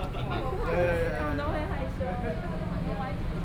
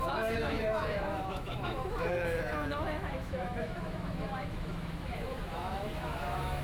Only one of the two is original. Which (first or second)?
first